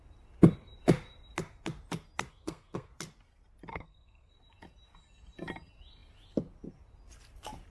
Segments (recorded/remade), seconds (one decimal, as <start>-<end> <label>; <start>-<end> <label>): 0.0-2.3 recorded; 2.3-2.9 remade; 2.9-3.7 recorded; 3.7-4.3 remade; 4.3-7.7 recorded